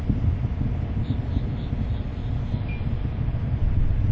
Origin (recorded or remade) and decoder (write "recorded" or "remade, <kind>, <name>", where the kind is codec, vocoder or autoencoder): recorded